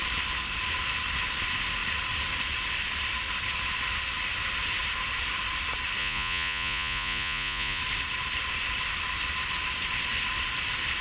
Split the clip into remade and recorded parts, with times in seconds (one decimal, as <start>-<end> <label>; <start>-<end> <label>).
0.0-6.0 recorded; 6.0-7.8 remade; 7.8-11.0 recorded